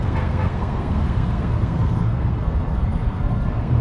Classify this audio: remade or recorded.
remade